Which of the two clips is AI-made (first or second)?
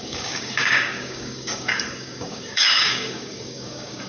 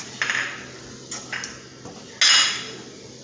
first